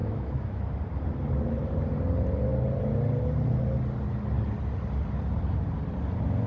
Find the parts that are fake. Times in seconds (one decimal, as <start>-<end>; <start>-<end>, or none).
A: 0.0-0.6